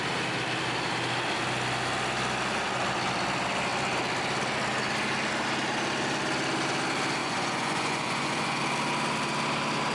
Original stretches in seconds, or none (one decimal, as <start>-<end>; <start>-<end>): 0.0-7.2; 8.6-9.9